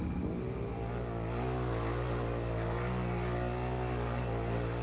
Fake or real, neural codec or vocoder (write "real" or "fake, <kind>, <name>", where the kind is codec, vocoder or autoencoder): real